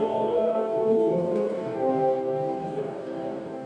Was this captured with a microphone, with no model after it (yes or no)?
no